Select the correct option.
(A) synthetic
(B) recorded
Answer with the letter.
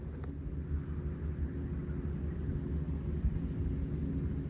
B